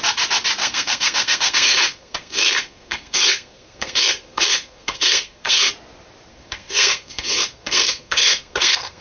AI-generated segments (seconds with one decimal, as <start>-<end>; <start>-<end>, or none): 0.6-5.7; 6.3-9.0